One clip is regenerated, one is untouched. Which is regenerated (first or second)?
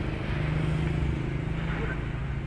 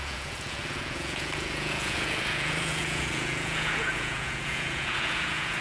second